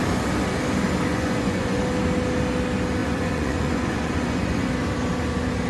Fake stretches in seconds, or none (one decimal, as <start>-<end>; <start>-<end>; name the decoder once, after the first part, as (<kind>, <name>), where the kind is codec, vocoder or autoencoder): 1.1-1.8 (vocoder, Vocos); 3.0-4.7